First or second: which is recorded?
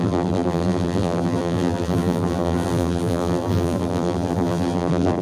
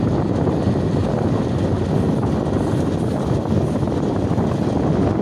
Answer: second